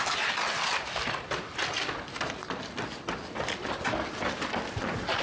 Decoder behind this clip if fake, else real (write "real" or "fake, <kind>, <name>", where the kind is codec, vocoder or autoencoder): fake, vocoder, BigVGAN v2